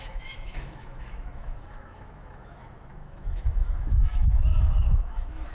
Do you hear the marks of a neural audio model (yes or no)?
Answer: yes